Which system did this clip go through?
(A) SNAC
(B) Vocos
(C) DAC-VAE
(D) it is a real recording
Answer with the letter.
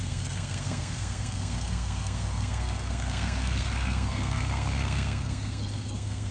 A